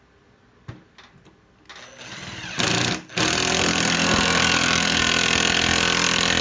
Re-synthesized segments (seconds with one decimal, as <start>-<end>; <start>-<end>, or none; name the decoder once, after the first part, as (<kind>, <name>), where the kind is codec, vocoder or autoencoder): 3.6-5.0 (codec, SNAC)